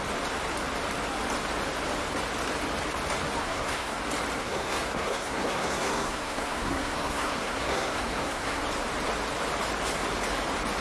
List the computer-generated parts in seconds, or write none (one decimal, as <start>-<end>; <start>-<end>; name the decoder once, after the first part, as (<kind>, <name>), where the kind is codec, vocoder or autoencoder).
3.4-4.0 (codec, SNAC); 4.4-8.6